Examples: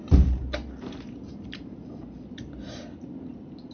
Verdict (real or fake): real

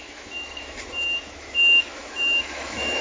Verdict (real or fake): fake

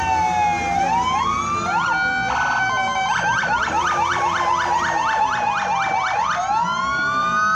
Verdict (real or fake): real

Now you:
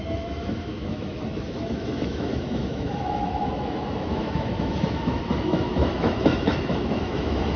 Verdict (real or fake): fake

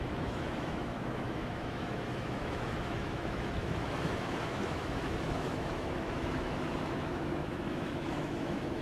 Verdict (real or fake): fake